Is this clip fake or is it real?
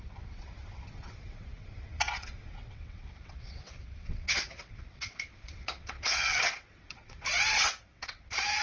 fake